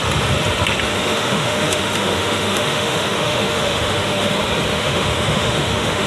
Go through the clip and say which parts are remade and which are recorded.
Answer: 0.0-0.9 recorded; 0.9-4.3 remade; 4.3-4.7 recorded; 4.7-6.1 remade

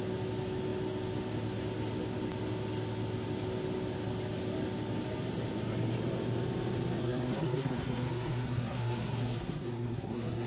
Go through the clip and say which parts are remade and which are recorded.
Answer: 0.0-7.0 recorded; 7.0-10.5 remade

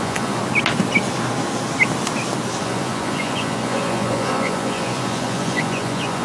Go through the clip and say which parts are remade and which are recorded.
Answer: 0.0-0.4 remade; 0.4-2.6 recorded; 2.6-6.2 remade

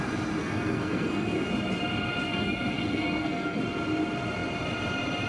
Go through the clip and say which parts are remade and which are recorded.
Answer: 0.0-0.4 recorded; 0.4-1.5 remade; 1.5-2.3 recorded; 2.3-3.6 remade; 3.6-5.3 recorded

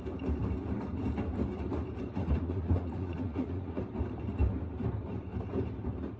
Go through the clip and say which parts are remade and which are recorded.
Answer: 0.0-2.1 recorded; 2.1-3.8 remade; 3.8-6.2 recorded

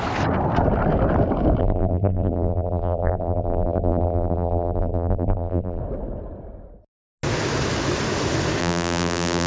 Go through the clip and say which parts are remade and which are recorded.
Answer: 0.0-1.6 recorded; 1.6-5.8 remade; 5.8-8.6 recorded; 8.6-9.5 remade

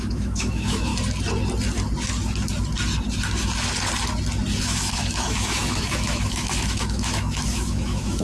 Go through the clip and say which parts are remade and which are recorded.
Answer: 0.0-0.9 remade; 0.9-4.6 recorded; 4.6-8.2 remade